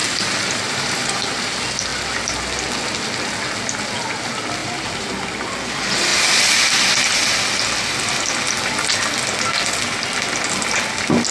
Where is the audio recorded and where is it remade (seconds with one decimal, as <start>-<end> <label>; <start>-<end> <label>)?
0.0-1.5 remade; 1.5-4.6 recorded; 4.6-5.2 remade; 5.2-11.3 recorded